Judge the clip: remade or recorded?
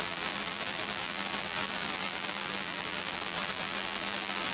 remade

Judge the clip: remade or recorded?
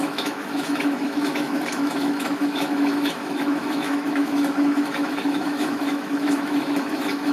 remade